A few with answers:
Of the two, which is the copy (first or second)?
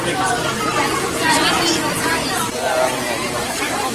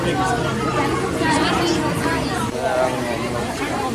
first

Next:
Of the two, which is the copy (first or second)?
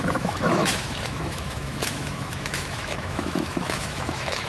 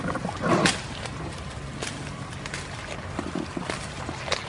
first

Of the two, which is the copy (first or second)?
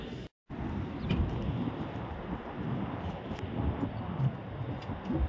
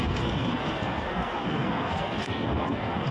second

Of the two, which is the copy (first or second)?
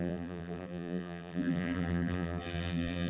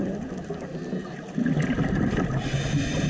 first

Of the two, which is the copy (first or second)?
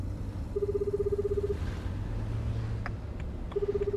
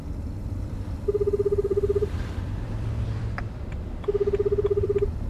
second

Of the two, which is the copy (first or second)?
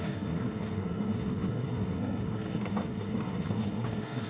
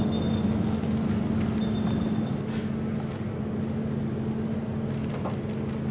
first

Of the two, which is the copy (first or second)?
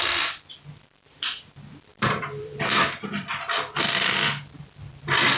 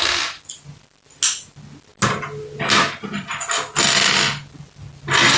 first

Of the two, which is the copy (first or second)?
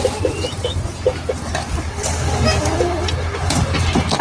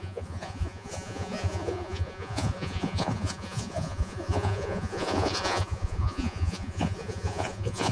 second